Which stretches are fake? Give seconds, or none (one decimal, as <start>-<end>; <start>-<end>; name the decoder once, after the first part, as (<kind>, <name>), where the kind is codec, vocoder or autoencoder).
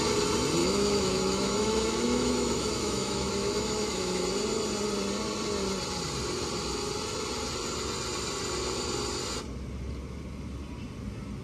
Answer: 0.6-4.2 (autoencoder, DAC-VAE)